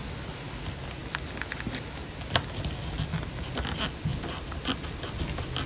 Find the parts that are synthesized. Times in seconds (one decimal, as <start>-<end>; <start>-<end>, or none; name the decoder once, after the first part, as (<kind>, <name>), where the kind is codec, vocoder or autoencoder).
none